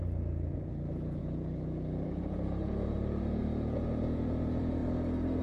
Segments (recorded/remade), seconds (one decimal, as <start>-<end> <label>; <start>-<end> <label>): 0.0-4.8 remade; 4.8-5.4 recorded